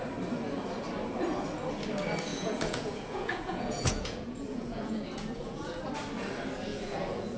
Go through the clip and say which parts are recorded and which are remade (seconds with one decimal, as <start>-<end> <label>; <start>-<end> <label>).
0.0-2.3 recorded; 2.3-5.8 remade; 5.8-6.7 recorded; 6.7-7.4 remade